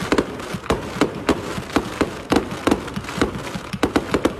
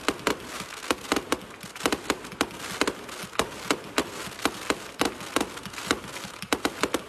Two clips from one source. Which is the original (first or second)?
second